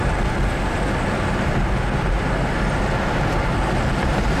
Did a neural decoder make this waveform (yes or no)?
no